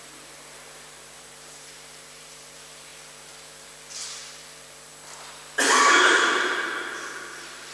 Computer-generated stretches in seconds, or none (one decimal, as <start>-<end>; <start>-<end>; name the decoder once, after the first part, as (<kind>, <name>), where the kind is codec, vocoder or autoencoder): 0.0-4.9 (vocoder, BigVGAN v2); 5.8-7.7